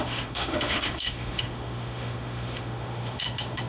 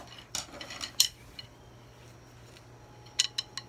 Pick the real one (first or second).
second